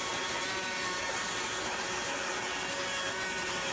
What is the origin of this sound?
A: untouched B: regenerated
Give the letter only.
A